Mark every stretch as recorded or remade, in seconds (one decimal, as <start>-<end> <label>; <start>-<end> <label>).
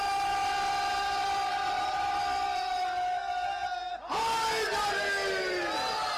0.0-6.2 recorded